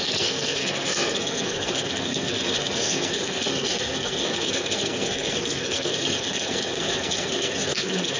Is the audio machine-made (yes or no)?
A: yes